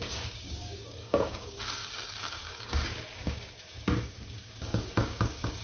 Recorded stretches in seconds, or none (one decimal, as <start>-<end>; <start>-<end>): none